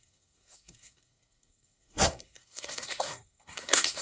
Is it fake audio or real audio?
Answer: fake